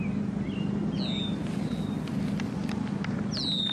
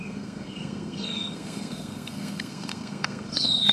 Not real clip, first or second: second